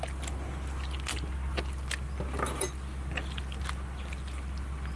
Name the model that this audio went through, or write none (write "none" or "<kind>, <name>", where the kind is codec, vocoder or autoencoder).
none